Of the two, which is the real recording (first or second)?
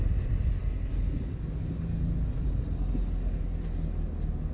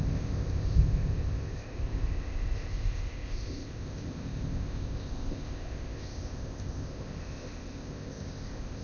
first